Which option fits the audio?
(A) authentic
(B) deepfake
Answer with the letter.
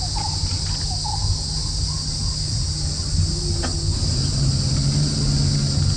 A